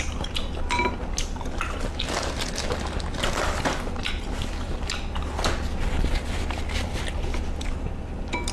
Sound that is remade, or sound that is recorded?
recorded